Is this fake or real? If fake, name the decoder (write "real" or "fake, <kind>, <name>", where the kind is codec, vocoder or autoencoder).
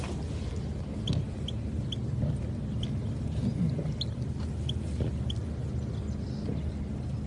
real